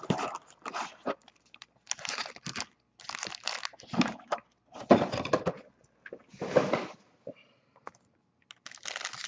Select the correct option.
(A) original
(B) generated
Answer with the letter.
A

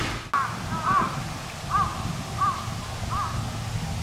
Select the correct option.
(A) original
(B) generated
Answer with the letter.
A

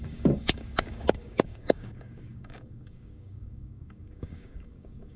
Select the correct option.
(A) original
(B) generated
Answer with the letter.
B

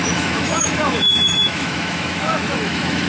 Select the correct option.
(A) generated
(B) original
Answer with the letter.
A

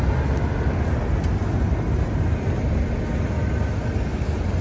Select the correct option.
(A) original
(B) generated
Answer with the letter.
A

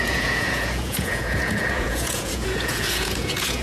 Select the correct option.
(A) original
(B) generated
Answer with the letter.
B